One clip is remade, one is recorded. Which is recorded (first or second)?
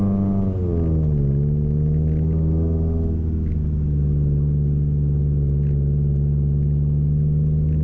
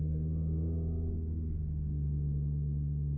first